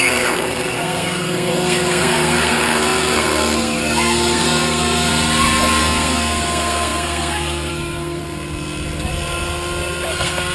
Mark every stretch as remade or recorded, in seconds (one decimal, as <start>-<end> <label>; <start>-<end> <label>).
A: 0.0-5.1 remade; 5.1-5.8 recorded; 5.8-8.2 remade; 8.2-10.1 recorded; 10.1-10.5 remade